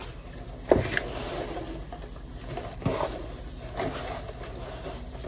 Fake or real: real